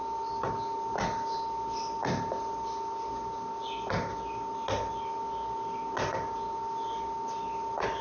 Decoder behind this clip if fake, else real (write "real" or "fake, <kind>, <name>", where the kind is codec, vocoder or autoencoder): real